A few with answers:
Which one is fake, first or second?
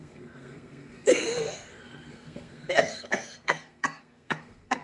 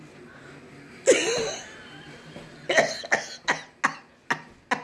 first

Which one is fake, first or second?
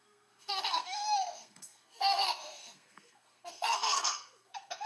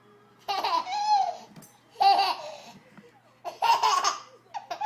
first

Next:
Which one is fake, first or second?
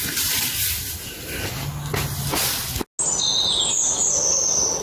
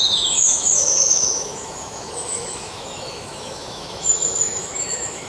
second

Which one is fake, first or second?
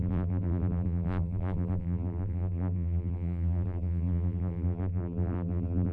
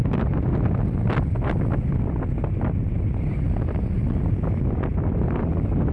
first